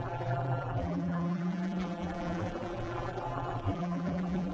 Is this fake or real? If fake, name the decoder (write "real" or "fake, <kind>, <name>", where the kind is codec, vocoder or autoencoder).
fake, vocoder, BigVGAN v2